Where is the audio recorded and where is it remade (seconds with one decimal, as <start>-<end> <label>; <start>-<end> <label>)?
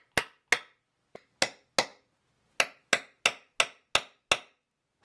0.0-5.0 recorded